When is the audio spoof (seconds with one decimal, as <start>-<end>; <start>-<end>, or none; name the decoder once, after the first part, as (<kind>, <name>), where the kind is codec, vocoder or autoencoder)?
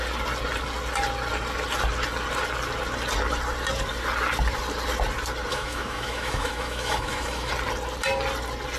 5.5-7.5 (autoencoder, DAC-VAE)